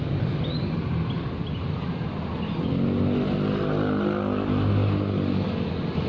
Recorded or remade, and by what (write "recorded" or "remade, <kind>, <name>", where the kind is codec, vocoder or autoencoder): recorded